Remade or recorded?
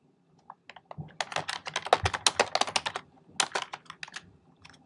recorded